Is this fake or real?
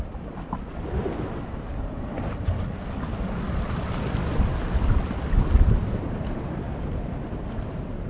real